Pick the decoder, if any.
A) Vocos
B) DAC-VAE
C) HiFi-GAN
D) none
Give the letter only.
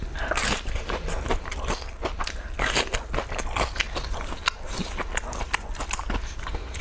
D